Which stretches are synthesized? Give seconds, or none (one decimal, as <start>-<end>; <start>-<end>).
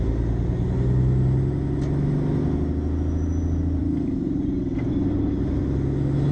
3.8-5.2